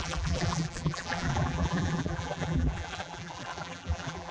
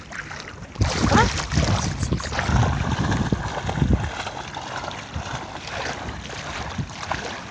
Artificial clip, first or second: first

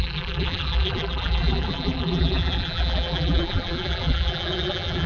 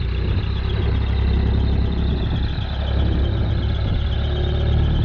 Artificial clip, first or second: first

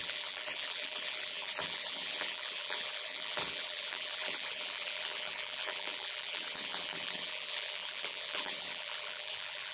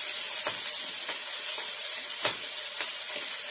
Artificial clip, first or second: first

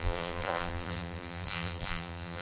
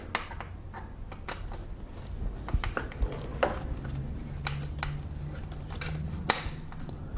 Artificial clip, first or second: first